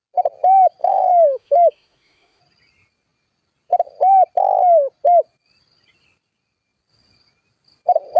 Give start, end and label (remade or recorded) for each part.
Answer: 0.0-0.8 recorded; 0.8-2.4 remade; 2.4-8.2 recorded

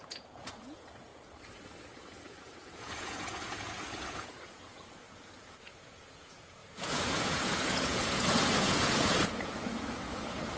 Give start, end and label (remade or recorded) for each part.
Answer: 0.0-1.1 remade; 1.1-2.0 recorded; 2.0-10.6 remade